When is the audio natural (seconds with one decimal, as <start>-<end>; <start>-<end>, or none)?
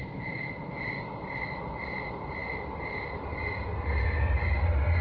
0.0-5.0